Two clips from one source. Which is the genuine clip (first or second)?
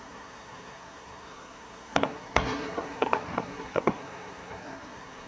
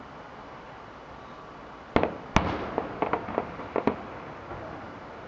second